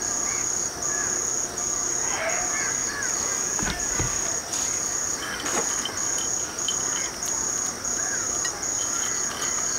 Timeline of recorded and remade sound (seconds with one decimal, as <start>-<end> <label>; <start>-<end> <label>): 0.0-9.8 recorded